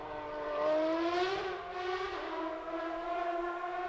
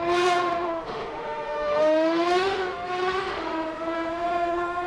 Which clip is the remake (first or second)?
second